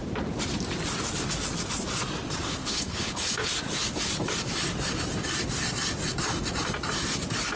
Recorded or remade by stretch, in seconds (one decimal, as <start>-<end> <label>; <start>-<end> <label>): 0.0-2.6 recorded; 2.6-3.5 remade; 3.5-7.6 recorded